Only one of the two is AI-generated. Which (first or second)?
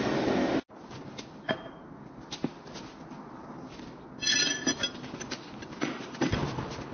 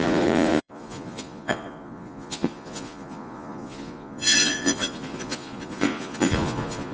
second